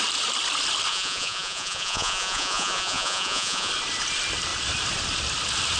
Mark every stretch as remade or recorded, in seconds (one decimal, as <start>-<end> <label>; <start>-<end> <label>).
0.0-0.9 recorded; 0.9-3.7 remade; 3.7-5.8 recorded